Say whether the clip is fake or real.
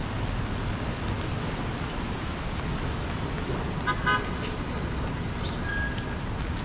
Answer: real